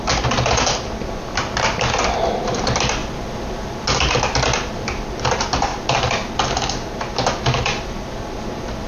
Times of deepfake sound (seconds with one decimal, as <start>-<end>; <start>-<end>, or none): none